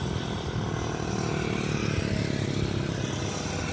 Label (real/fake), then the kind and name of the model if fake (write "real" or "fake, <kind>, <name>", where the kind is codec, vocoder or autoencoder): real